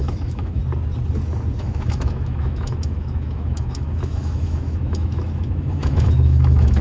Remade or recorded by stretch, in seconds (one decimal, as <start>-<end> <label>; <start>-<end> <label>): 0.0-0.6 remade; 0.6-1.6 recorded; 1.6-6.8 remade